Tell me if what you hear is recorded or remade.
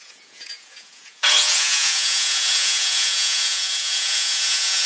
remade